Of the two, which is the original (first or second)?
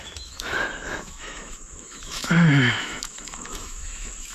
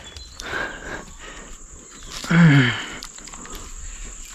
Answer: second